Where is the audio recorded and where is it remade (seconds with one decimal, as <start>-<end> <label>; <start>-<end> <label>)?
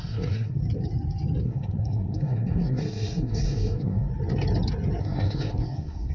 0.0-0.6 remade; 0.6-1.4 recorded; 1.4-4.1 remade; 4.1-5.0 recorded; 5.0-6.1 remade